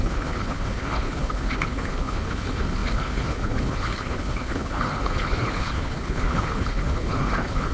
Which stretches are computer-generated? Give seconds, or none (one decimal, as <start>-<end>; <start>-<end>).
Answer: 0.0-7.7